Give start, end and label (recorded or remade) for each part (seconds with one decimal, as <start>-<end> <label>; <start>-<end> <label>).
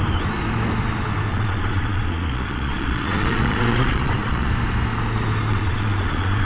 0.0-1.3 recorded; 1.3-4.5 remade; 4.5-5.5 recorded; 5.5-6.5 remade